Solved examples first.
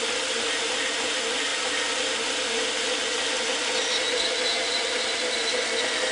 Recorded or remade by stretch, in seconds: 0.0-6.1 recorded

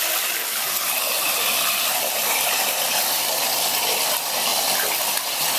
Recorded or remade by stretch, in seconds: 0.0-5.6 recorded

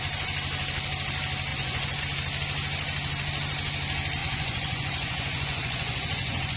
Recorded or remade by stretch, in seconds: 0.0-1.5 recorded; 1.5-2.0 remade; 2.0-4.2 recorded; 4.2-6.6 remade